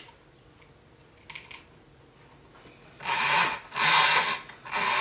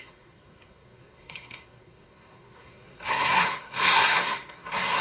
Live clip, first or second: first